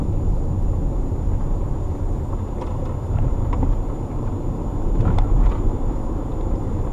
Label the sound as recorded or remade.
remade